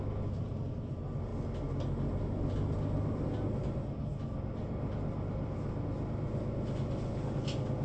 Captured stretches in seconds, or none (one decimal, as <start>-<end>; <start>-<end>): 0.0-7.8